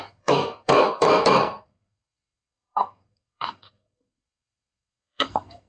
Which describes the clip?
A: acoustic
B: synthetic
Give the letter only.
B